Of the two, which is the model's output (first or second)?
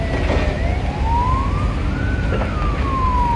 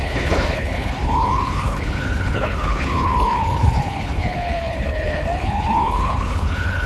second